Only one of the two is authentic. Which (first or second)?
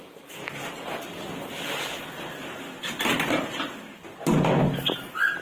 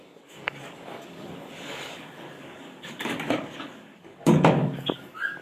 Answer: first